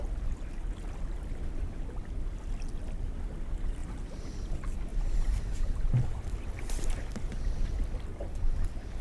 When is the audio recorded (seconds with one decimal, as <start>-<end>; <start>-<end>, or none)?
0.0-3.8; 4.5-4.9; 7.4-8.1